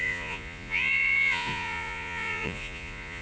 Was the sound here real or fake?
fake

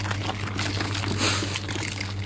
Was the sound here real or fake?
real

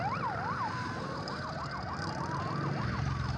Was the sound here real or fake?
real